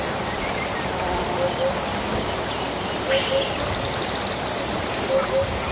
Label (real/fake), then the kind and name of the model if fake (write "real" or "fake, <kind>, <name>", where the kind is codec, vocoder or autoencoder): real